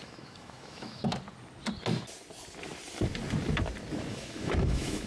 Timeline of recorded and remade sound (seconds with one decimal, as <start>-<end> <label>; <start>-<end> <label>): 0.0-1.1 remade; 1.1-4.1 recorded; 4.1-5.1 remade

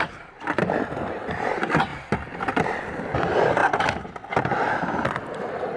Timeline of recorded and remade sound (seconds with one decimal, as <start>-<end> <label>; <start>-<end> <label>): 0.0-5.8 recorded

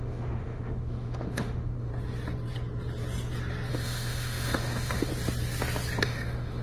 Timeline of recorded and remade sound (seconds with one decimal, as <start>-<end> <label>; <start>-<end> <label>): 0.0-1.9 remade; 1.9-3.7 recorded; 3.7-5.1 remade; 5.1-6.0 recorded; 6.0-6.6 remade